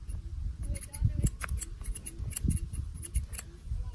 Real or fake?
real